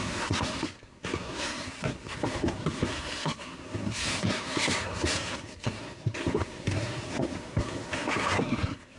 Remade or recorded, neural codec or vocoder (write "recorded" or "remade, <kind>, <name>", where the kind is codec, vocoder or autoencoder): remade, codec, SNAC